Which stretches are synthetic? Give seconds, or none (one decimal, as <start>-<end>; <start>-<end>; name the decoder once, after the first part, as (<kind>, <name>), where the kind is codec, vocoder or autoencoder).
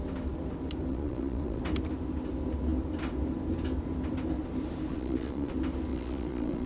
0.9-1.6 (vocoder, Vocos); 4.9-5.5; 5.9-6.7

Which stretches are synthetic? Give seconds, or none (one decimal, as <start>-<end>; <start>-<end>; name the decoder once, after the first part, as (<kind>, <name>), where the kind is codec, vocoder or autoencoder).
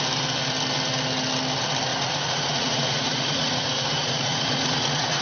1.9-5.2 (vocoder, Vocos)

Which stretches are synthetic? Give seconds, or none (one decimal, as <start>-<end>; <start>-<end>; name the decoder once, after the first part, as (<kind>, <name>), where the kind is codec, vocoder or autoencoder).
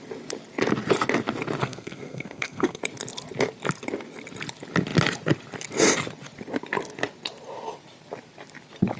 1.6-2.8 (codec, SNAC)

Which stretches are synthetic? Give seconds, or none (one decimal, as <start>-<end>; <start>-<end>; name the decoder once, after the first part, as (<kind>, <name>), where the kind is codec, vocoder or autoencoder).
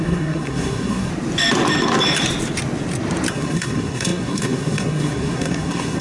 0.0-1.1 (codec, SNAC); 3.3-6.0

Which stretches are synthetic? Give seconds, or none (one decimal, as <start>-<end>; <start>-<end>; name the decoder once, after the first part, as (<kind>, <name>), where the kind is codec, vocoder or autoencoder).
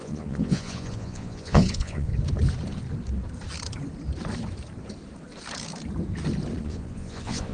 0.0-2.1 (vocoder, Vocos); 6.6-7.5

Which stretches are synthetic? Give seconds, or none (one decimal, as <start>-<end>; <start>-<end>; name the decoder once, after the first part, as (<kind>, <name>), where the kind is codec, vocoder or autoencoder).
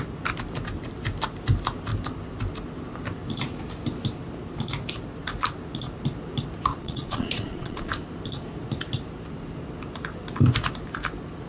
6.7-7.9 (vocoder, Vocos)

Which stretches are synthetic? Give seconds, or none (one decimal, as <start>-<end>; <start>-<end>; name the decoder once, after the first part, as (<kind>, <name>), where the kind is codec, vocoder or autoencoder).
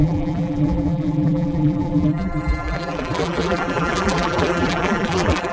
0.0-5.5 (vocoder, BigVGAN v2)